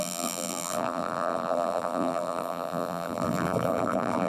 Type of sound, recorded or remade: remade